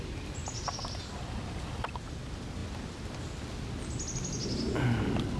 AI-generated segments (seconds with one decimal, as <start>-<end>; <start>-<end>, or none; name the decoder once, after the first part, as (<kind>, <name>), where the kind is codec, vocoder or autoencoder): none